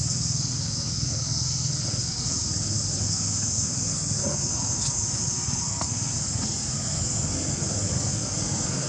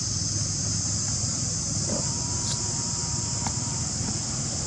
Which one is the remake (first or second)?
first